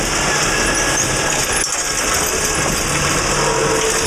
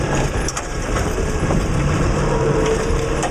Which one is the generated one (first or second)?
second